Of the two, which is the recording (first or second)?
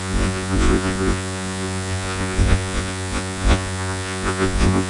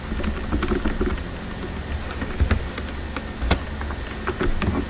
second